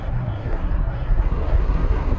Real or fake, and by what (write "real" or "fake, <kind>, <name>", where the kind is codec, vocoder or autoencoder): fake, codec, SNAC